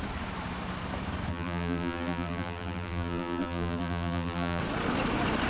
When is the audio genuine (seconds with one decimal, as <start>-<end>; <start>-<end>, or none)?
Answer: 0.0-1.3; 4.6-5.5